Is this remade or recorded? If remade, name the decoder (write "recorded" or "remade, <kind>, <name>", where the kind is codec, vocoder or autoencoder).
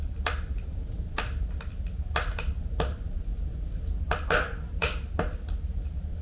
recorded